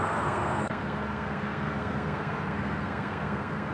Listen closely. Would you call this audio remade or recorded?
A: remade